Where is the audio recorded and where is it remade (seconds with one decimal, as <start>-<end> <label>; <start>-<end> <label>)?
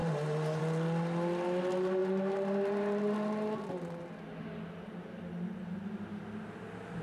0.0-7.0 recorded